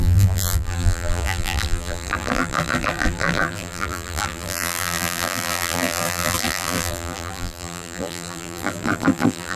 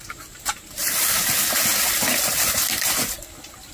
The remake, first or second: first